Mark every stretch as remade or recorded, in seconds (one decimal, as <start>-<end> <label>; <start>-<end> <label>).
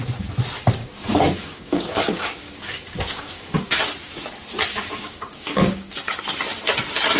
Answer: 0.0-0.8 recorded; 0.8-3.8 remade; 3.8-4.7 recorded; 4.7-6.2 remade; 6.2-7.2 recorded